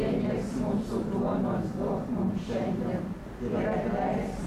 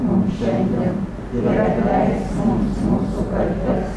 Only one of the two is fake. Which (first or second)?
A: first